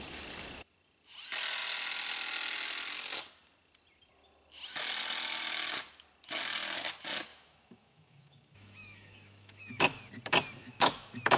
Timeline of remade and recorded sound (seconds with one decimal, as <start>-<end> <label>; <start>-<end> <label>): 0.0-7.3 recorded; 7.3-10.1 remade; 10.1-10.6 recorded; 10.6-11.4 remade